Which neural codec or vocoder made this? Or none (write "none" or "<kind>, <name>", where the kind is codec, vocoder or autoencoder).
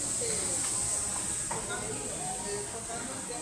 none